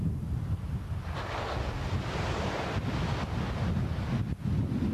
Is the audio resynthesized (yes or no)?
no